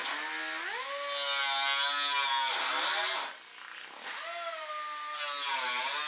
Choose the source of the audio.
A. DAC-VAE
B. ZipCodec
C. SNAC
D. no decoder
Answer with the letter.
D